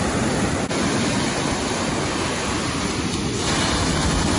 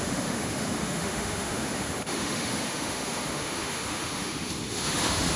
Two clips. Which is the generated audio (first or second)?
second